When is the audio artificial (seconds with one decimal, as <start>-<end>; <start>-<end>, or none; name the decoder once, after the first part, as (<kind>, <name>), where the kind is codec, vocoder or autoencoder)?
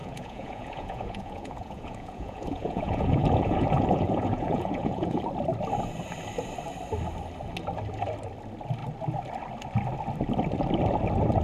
0.0-5.2 (vocoder, Vocos)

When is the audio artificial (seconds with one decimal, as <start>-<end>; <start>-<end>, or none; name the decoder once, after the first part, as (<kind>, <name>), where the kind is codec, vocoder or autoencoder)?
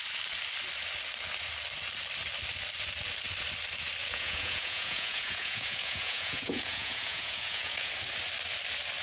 4.0-7.9 (vocoder, Vocos)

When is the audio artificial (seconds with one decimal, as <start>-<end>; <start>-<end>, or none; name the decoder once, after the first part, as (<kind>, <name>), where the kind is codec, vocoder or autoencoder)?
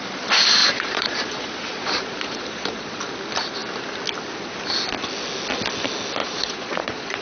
0.6-3.0 (vocoder, Vocos); 6.2-7.2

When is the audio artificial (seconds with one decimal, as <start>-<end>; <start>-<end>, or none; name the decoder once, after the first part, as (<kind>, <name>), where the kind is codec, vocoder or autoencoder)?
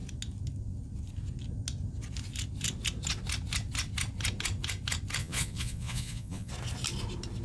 5.2-6.5 (vocoder, Vocos)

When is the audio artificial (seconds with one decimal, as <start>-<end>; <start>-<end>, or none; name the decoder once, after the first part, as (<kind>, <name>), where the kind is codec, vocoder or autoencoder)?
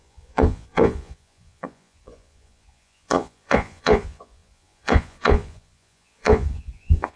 0.0-7.2 (vocoder, Vocos)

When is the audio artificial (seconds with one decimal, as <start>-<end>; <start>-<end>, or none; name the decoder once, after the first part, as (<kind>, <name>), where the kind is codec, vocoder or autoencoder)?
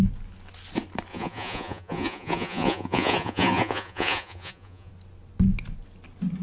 1.1-4.9 (vocoder, Vocos)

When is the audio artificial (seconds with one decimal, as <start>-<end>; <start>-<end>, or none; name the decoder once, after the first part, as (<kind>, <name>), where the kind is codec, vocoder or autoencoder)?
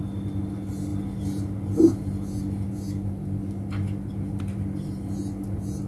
none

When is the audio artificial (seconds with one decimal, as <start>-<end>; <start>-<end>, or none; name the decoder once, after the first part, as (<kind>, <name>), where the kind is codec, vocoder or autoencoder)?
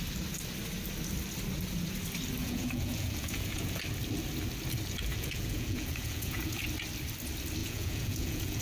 2.4-3.8 (vocoder, Vocos); 5.1-6.6; 7.6-8.6